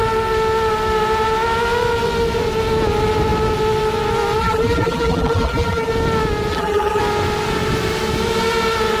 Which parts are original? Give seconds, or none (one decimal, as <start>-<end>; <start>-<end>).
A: 0.0-4.4; 5.9-6.5; 7.0-9.0